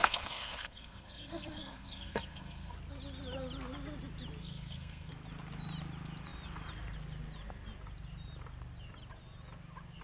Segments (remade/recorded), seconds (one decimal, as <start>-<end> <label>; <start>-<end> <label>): 0.0-2.7 remade; 2.7-4.4 recorded; 4.4-5.1 remade; 5.1-10.0 recorded